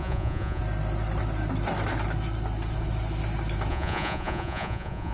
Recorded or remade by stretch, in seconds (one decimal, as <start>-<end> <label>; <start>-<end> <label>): 0.0-0.6 remade; 0.6-3.7 recorded; 3.7-5.1 remade